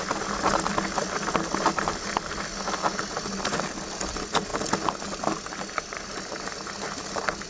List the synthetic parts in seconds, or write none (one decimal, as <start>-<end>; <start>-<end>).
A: none